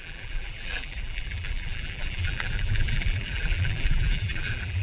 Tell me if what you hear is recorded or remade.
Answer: remade